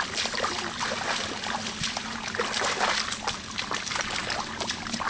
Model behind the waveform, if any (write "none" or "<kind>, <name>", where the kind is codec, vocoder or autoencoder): none